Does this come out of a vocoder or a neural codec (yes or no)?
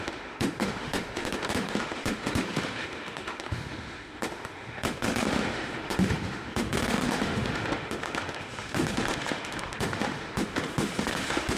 yes